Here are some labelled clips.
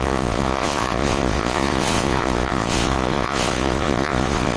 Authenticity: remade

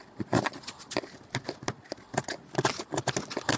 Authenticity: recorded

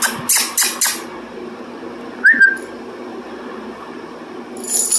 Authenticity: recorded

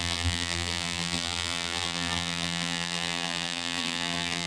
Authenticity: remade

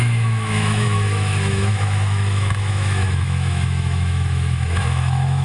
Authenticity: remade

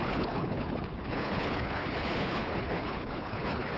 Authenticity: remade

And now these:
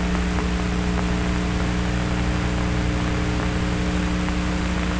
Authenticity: recorded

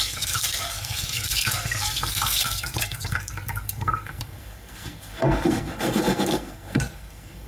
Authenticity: remade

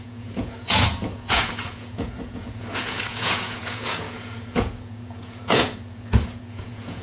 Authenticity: remade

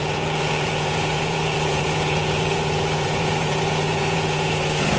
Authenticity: remade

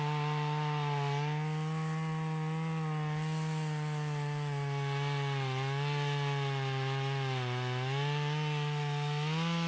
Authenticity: recorded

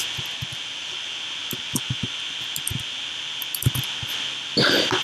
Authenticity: recorded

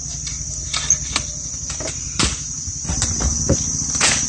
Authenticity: recorded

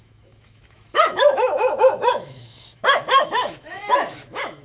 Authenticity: remade